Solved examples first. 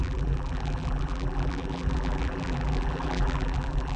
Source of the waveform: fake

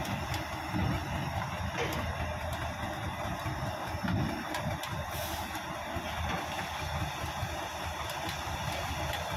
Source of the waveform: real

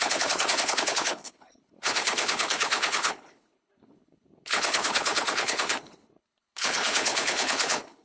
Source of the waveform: fake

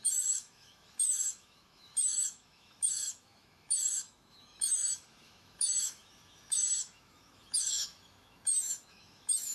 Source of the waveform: fake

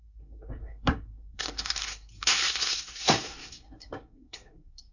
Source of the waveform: fake